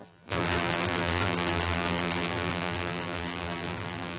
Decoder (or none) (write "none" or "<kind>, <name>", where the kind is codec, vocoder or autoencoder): vocoder, BigVGAN v2